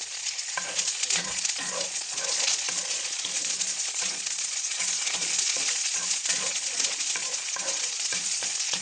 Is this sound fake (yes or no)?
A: yes